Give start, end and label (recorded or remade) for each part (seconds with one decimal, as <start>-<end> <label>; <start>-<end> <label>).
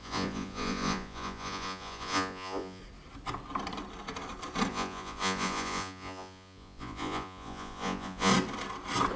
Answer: 0.0-2.8 remade; 2.8-4.7 recorded; 4.7-8.3 remade; 8.3-9.2 recorded